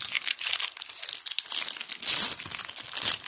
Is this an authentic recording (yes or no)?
yes